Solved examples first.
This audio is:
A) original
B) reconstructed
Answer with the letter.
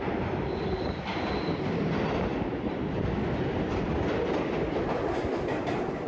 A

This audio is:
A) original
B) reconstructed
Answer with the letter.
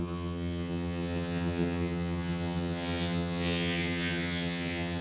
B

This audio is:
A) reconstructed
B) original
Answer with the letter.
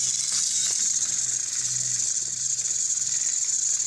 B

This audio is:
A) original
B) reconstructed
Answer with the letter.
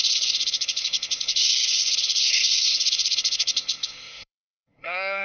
B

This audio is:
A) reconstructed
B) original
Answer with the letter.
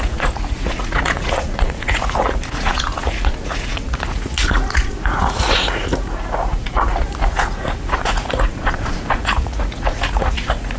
A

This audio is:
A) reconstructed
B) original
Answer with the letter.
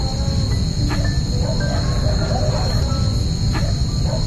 B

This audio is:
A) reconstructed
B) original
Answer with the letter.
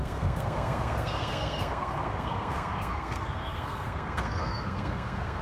A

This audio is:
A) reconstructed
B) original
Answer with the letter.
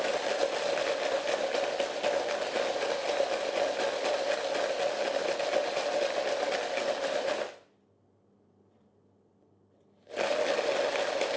B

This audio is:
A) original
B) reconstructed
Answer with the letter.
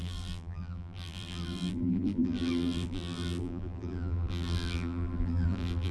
B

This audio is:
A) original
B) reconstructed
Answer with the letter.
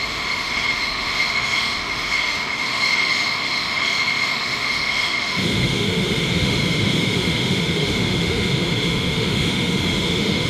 B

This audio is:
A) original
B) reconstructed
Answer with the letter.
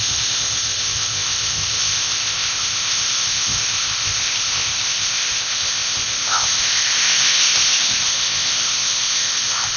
B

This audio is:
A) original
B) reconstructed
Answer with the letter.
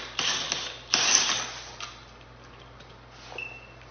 A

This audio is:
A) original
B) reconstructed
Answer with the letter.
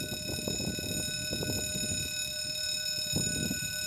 A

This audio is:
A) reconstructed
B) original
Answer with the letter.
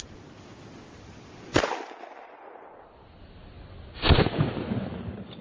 B